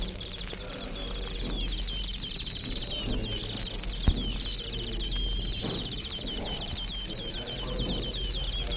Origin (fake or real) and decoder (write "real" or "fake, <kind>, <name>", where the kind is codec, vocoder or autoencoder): real